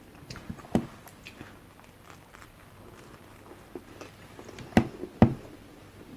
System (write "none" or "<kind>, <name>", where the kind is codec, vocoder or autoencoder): none